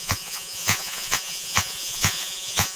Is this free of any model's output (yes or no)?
no